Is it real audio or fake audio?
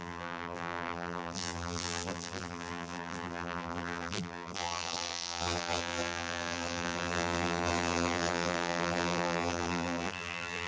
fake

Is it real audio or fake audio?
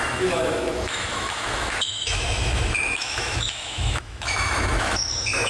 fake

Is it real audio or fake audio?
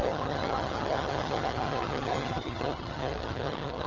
fake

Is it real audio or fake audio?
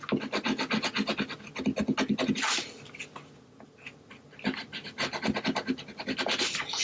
real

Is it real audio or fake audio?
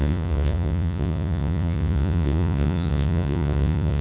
fake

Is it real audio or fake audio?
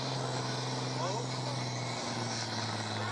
real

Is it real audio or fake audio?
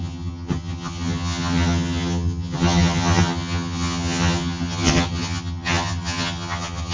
fake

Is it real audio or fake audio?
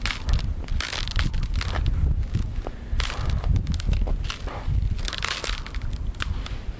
real